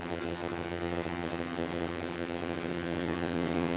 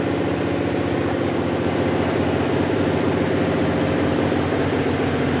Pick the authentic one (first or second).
second